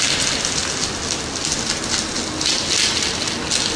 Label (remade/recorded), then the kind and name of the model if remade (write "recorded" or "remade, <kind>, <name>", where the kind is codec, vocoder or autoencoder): recorded